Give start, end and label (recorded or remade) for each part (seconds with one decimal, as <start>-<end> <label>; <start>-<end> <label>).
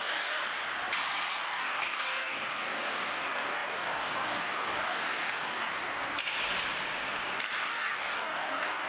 0.0-0.4 remade; 0.4-1.3 recorded; 1.3-5.7 remade; 5.7-7.6 recorded; 7.6-8.9 remade